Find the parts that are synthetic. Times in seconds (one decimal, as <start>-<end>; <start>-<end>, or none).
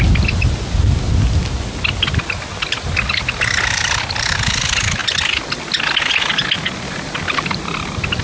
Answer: none